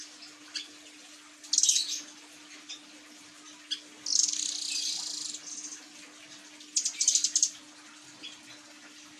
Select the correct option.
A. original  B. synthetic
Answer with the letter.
A